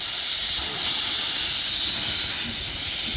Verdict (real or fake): real